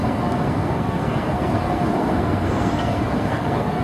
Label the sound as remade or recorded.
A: remade